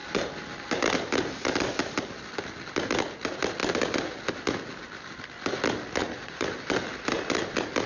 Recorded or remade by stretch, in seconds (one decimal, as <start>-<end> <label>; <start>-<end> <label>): 0.0-6.0 recorded; 6.0-6.5 remade; 6.5-7.9 recorded